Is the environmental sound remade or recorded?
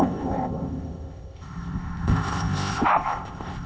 remade